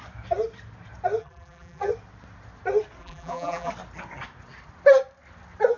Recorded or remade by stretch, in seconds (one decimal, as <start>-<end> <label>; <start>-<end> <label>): 0.0-1.2 recorded; 1.2-1.9 remade; 1.9-3.0 recorded; 3.0-3.7 remade; 3.7-5.8 recorded